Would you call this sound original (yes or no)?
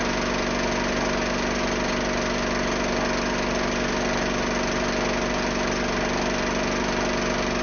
yes